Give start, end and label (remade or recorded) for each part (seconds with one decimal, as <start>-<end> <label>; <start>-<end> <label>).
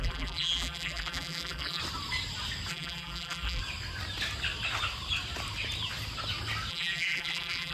0.0-1.8 remade; 1.8-2.7 recorded; 2.7-3.6 remade; 3.6-6.7 recorded; 6.7-7.7 remade